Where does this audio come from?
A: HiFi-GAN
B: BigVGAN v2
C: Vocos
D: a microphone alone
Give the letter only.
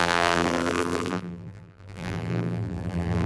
B